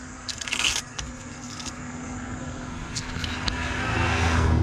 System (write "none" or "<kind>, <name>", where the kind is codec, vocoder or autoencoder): codec, SNAC